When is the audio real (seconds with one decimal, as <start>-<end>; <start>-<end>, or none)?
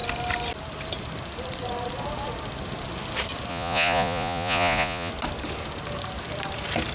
0.0-3.5; 5.1-6.9